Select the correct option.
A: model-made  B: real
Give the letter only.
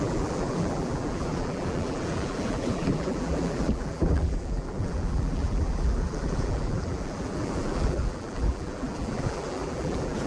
A